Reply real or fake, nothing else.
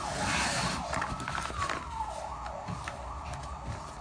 real